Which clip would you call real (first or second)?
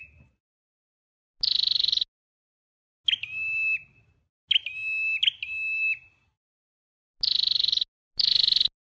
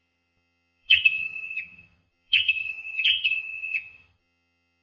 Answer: first